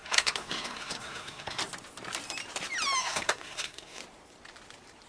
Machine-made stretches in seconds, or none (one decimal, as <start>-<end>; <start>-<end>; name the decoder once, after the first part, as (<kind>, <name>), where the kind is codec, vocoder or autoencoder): 0.0-1.6 (codec, SNAC); 3.0-4.0